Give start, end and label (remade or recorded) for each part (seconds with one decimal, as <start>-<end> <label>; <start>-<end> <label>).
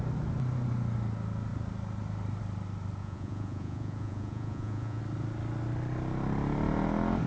0.0-3.0 recorded; 3.0-5.0 remade; 5.0-7.3 recorded